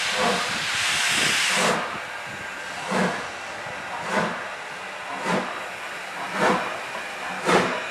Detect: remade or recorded recorded